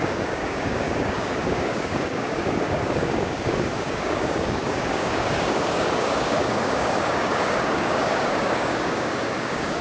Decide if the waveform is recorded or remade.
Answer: remade